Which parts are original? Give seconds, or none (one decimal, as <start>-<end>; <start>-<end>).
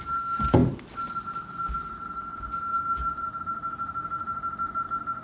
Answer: 0.0-5.2